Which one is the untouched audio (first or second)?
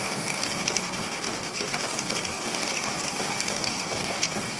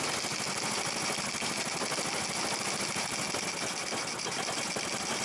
second